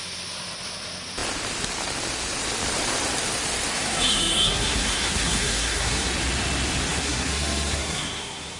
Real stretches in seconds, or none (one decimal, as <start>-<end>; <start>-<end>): 0.0-3.7; 6.1-6.9